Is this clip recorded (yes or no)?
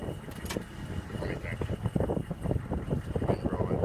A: yes